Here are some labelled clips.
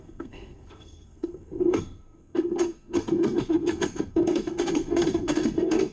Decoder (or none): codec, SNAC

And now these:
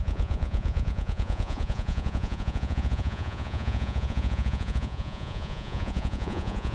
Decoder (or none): vocoder, Vocos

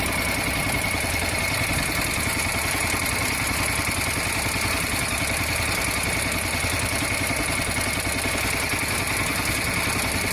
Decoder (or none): none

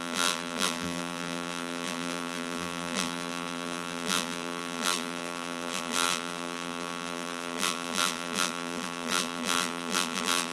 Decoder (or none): vocoder, BigVGAN v2